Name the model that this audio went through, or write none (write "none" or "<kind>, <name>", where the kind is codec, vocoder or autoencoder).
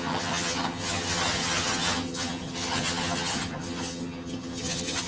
vocoder, HiFi-GAN